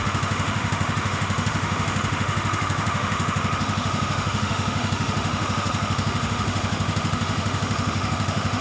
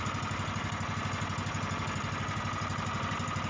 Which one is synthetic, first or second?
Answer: first